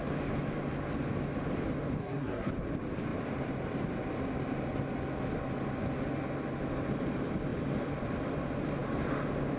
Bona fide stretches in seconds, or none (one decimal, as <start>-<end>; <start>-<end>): 0.0-2.0; 2.5-9.6